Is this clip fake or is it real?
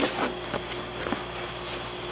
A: real